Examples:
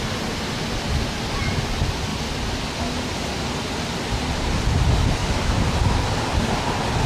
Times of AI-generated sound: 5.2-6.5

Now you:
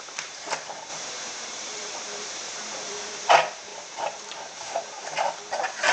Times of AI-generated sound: 0.9-3.3; 3.7-5.3

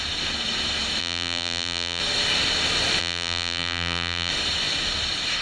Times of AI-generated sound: 1.0-2.0; 3.0-4.3

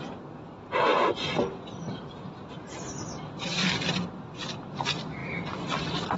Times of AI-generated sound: 0.9-3.7; 5.2-5.8

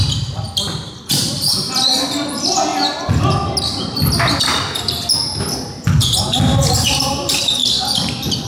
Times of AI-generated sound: 0.0-2.7; 6.2-8.5